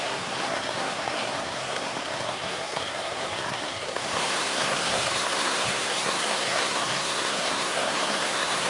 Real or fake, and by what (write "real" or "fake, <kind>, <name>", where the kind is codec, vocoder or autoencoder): fake, codec, SNAC